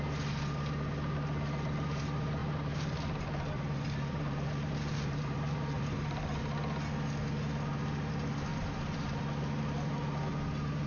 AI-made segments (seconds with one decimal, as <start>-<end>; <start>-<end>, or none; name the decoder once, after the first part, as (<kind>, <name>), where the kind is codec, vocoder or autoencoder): 2.4-6.4 (vocoder, BigVGAN v2); 8.5-9.2